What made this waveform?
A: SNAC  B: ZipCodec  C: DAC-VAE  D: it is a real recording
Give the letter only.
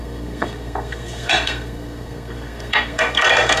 A